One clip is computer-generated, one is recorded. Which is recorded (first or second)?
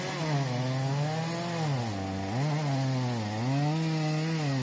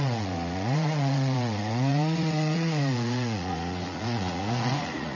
first